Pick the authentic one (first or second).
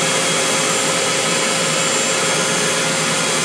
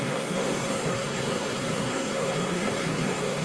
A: first